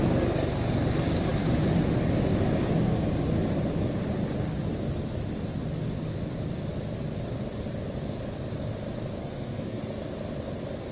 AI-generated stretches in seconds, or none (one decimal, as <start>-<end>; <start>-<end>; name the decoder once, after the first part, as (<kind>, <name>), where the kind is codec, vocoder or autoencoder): 9.2-9.8 (codec, SNAC)